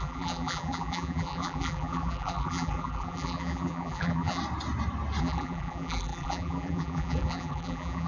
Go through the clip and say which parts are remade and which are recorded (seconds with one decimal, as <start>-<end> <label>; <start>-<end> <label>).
0.0-4.4 remade; 4.4-5.2 recorded; 5.2-8.1 remade